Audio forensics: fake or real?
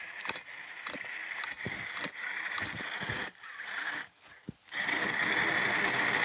real